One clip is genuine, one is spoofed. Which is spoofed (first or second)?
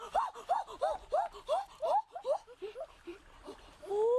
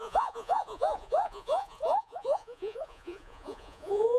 second